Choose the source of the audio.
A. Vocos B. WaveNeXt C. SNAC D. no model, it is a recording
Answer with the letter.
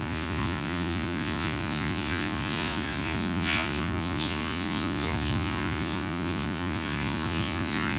A